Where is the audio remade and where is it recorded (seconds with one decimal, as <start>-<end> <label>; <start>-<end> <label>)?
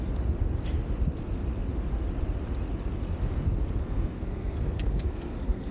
0.0-3.8 recorded; 3.8-5.7 remade